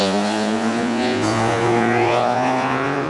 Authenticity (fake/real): fake